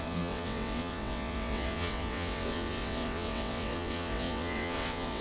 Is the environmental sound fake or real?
fake